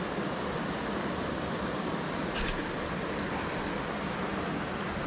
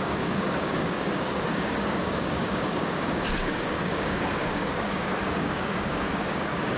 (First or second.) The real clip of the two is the first